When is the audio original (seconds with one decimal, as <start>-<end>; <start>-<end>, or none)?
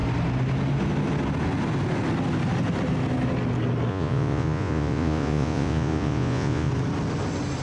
0.0-3.9; 6.7-7.6